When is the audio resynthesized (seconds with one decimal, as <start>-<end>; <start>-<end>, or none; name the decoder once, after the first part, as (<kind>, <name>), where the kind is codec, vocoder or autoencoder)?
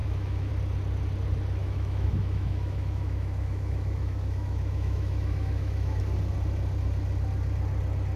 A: 0.0-0.5 (autoencoder, DAC-VAE); 1.6-6.0